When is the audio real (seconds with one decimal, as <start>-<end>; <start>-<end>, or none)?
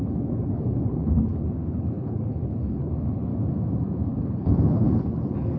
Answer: 3.3-4.1